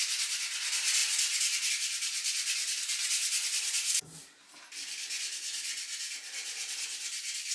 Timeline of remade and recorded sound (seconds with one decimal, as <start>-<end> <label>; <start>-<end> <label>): 0.0-7.5 recorded